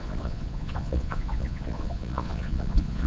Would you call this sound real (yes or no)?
no